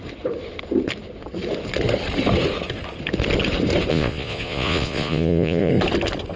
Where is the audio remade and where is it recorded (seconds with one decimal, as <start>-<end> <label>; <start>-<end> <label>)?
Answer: 0.0-3.9 recorded; 3.9-5.7 remade; 5.7-6.4 recorded